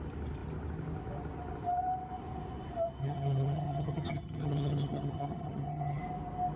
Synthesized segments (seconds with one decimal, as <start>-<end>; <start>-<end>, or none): 3.0-6.0